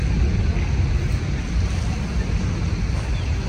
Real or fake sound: real